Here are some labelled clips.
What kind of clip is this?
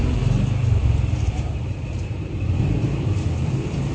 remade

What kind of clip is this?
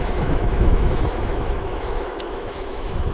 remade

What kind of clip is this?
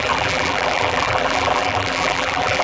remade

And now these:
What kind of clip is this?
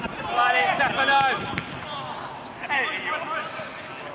recorded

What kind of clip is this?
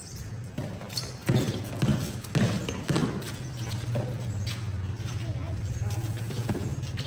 recorded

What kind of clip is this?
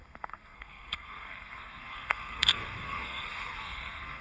remade